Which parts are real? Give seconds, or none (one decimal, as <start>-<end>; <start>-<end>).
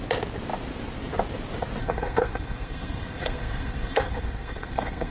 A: 0.0-1.8